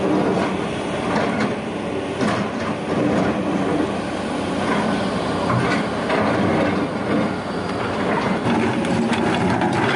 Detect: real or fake real